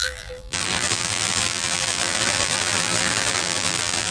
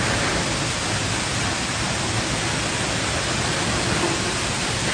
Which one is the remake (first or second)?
first